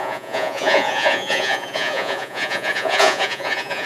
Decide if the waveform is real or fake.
fake